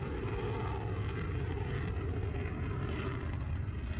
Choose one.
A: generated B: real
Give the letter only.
B